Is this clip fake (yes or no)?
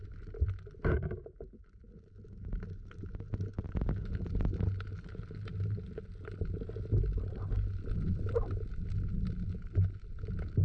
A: no